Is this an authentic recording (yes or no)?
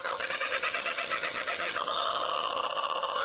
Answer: no